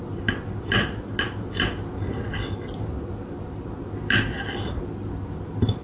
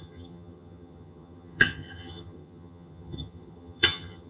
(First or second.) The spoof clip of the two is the second